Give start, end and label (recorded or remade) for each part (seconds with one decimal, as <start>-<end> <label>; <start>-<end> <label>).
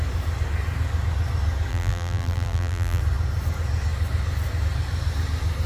0.0-1.7 recorded; 1.7-3.0 remade; 3.0-5.7 recorded